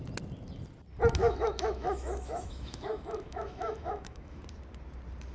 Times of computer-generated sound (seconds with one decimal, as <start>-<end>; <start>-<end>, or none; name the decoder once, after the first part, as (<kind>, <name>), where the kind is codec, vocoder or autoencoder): 1.2-4.4 (autoencoder, DAC-VAE)